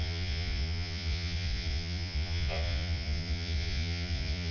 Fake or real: fake